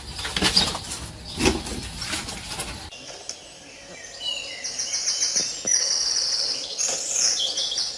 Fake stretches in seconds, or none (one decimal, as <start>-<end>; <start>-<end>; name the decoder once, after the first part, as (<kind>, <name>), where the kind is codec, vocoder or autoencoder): 5.8-6.8 (codec, HILCodec)